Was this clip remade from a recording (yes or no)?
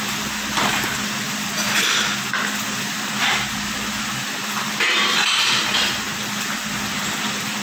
no